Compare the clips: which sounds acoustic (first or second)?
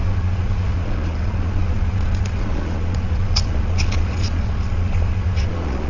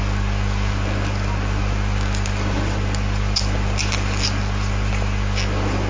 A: second